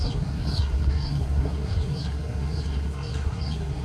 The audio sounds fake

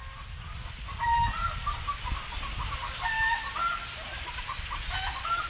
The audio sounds real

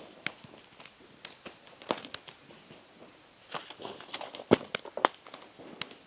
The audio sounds real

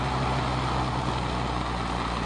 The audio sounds real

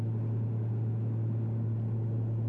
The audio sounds real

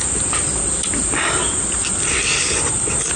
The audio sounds real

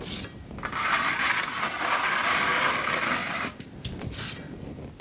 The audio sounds real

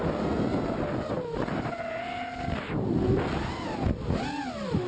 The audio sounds real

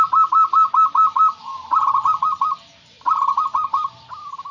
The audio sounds real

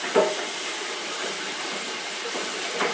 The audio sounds fake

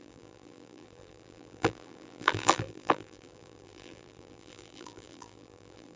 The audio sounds fake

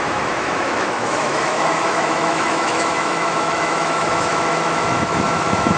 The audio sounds fake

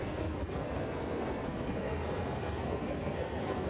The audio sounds fake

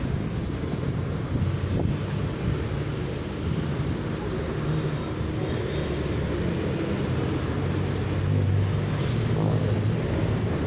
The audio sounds real